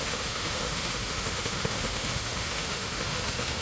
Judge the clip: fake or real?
fake